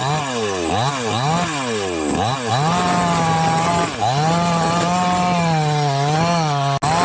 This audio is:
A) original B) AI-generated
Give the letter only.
A